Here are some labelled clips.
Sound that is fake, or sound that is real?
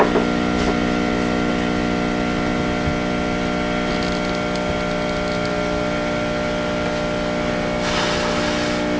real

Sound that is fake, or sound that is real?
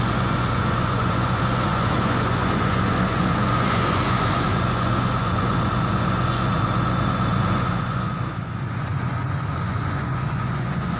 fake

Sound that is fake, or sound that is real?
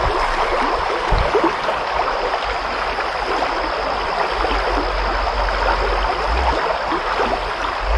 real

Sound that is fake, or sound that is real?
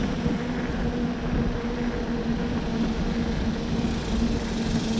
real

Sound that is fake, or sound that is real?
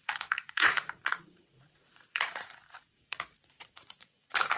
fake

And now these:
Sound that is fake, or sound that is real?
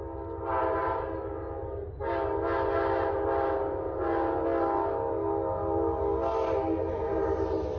real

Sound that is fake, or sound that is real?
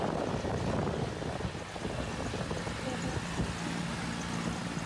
real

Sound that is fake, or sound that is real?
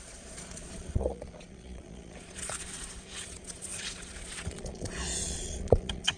fake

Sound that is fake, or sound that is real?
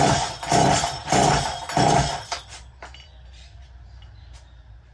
real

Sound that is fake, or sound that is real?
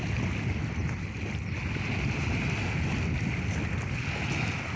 real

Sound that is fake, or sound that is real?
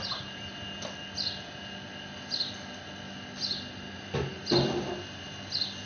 real